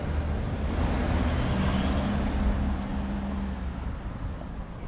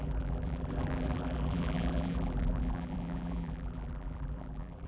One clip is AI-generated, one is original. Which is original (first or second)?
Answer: first